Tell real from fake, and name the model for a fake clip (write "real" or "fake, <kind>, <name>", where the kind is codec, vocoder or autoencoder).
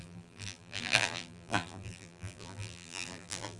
fake, vocoder, BigVGAN v2